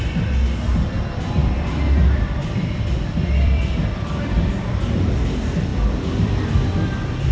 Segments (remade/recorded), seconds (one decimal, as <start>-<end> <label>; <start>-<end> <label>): 0.0-1.4 recorded; 1.4-4.8 remade; 4.8-7.3 recorded